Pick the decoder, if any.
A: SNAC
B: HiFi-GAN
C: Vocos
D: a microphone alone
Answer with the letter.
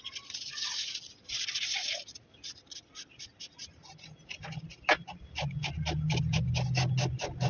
D